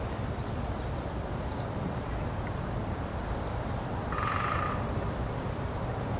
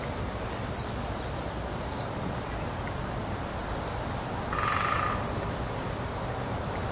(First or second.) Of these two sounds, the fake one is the first